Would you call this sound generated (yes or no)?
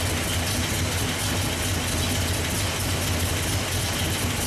no